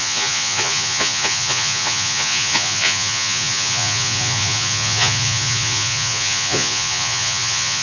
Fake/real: fake